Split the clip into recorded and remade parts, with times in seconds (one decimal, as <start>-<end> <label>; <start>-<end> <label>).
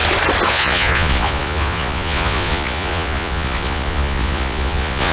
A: 0.0-0.5 recorded; 0.5-5.1 remade